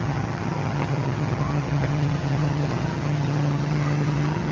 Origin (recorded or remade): remade